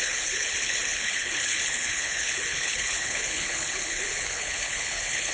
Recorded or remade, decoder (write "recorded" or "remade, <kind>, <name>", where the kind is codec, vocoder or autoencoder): remade, codec, HILCodec